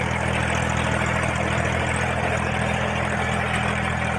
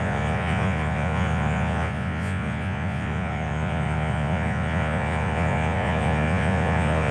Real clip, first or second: first